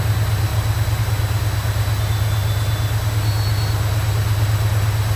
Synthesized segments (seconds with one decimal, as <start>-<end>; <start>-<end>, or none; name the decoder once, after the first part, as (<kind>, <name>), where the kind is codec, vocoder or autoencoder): none